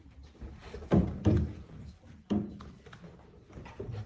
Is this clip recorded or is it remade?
recorded